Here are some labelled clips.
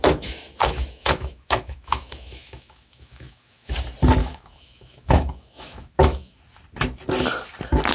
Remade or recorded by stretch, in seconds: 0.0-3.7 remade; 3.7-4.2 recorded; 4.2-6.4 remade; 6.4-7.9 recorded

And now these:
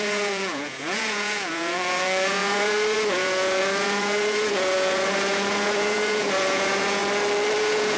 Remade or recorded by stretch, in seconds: 0.0-7.0 remade; 7.0-7.6 recorded; 7.6-8.0 remade